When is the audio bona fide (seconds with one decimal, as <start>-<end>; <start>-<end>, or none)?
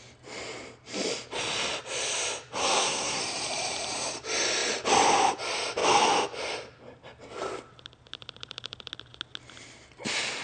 0.0-2.6; 3.2-10.4